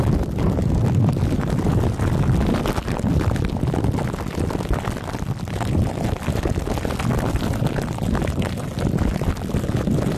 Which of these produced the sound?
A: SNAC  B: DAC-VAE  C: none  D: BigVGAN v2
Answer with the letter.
C